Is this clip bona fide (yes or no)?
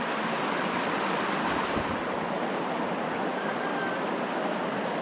yes